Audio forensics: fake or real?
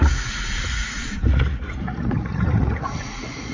fake